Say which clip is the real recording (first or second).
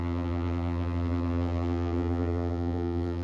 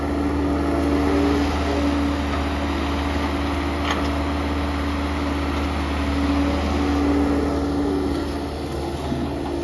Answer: second